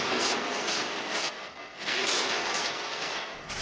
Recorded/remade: remade